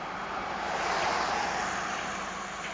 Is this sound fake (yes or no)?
no